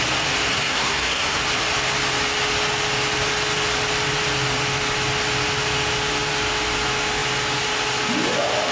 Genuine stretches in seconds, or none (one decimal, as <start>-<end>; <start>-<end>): 0.0-0.5; 1.4-8.7